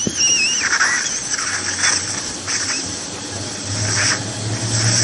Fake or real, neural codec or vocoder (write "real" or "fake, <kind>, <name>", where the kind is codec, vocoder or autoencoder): real